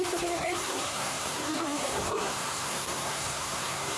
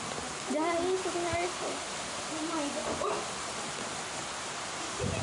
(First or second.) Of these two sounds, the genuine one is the second